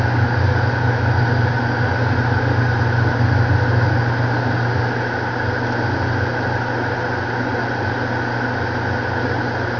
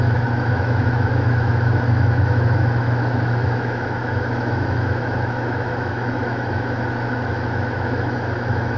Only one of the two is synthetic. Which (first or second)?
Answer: second